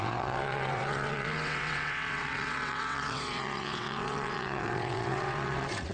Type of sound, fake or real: fake